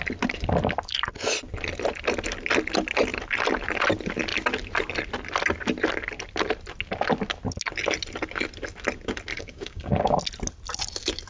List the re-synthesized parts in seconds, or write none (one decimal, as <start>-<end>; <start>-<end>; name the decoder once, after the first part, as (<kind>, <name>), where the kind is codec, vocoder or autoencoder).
9.3-10.2 (codec, DAC)